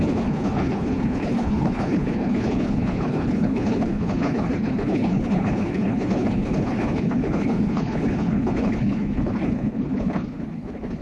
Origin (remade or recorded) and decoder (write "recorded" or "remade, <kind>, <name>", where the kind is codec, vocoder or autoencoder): remade, codec, HILCodec